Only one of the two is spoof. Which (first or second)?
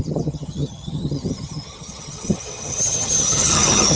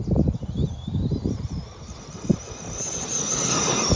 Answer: first